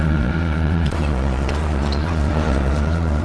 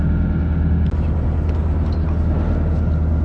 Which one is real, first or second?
second